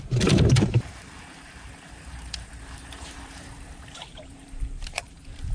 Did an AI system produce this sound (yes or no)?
yes